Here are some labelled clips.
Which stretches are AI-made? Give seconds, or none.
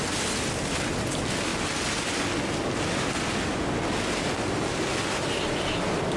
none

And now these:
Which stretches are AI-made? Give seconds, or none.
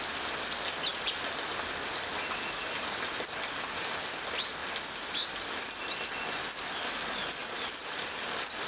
7.4-8.2 (vocoder, BigVGAN v2)